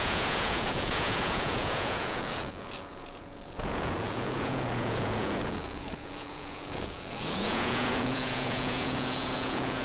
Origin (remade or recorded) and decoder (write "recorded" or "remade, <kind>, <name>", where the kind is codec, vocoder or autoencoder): remade, vocoder, Vocos